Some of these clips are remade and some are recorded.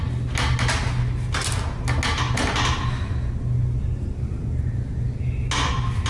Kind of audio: recorded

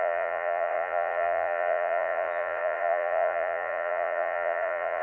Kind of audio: remade